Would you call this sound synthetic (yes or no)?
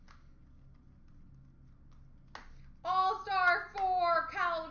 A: no